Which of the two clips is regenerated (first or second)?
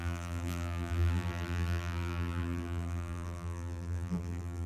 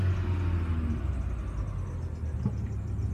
first